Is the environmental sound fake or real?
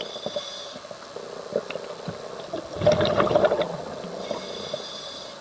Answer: real